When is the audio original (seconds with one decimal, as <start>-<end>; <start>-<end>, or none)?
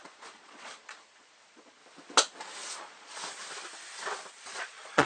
1.8-2.8; 3.2-4.3